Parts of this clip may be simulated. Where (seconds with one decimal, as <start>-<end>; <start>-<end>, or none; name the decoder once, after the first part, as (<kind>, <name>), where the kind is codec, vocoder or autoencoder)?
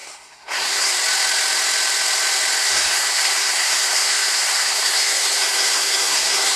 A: 0.0-0.9 (codec, SNAC); 2.6-6.6